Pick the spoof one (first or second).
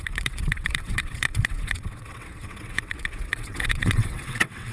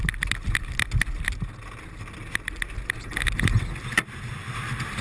first